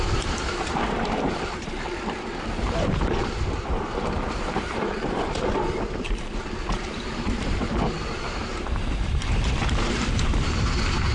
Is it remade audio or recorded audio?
remade